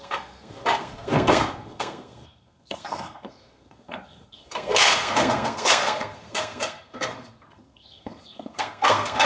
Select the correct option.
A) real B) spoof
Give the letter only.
B